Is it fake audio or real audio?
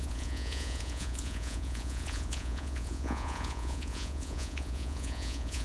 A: fake